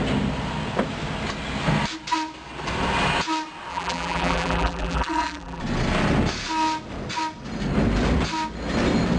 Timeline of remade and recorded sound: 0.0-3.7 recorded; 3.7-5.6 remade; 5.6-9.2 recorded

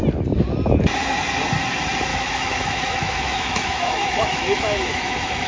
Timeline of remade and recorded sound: 0.0-2.1 recorded; 2.1-5.5 remade

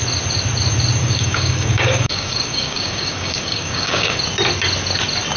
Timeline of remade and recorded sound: 0.0-1.0 recorded; 1.0-4.2 remade; 4.2-5.4 recorded

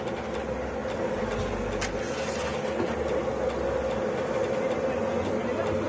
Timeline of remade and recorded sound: 0.0-5.9 recorded

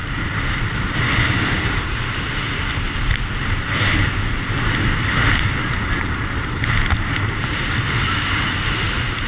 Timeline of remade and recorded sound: 0.0-9.3 recorded